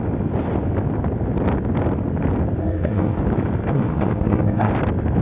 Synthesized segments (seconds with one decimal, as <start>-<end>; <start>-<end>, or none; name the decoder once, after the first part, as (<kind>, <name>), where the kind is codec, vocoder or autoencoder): 2.6-3.2 (codec, SNAC); 3.7-4.7